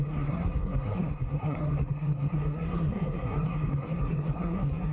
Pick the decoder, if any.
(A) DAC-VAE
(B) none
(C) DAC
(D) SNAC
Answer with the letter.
D